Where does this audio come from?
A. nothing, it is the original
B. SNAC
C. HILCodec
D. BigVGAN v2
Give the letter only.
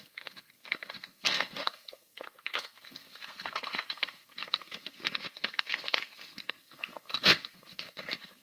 B